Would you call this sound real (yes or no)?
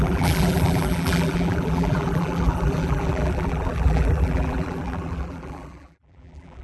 no